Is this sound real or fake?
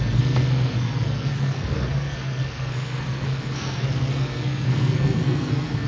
fake